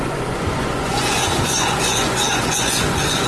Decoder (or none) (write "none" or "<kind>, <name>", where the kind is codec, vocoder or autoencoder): vocoder, Vocos